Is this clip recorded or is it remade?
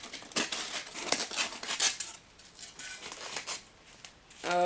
recorded